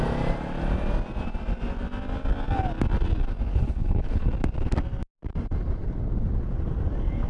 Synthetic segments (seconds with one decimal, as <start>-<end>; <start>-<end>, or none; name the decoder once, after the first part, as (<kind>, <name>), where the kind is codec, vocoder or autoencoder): 3.5-4.3 (codec, HILCodec)